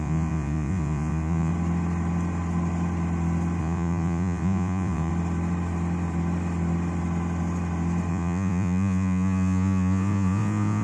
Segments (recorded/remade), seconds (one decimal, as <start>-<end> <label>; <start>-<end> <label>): 0.0-1.5 remade; 1.5-3.6 recorded; 3.6-5.1 remade; 5.1-8.1 recorded; 8.1-10.8 remade